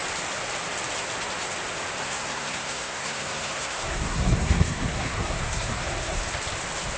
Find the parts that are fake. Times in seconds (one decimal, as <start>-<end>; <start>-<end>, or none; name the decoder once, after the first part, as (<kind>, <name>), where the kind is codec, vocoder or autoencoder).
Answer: 2.0-6.2 (codec, SNAC)